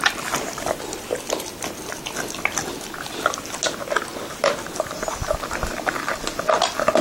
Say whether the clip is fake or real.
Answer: real